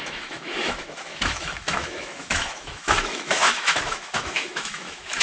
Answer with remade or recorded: remade